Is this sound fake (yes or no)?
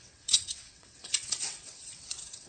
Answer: yes